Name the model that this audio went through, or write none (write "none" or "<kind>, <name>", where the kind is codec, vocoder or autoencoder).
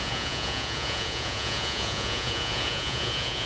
vocoder, Vocos